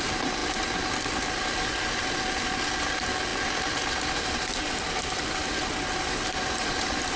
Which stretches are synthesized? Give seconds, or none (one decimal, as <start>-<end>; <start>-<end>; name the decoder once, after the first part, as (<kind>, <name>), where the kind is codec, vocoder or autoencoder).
none